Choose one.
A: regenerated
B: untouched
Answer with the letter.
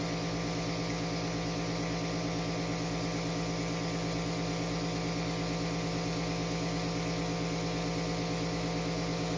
B